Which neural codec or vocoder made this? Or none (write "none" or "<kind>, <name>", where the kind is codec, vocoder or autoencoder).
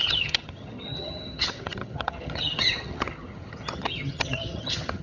vocoder, HiFi-GAN